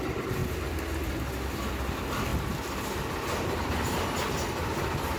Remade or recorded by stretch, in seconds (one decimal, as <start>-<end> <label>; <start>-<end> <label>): 0.0-5.2 recorded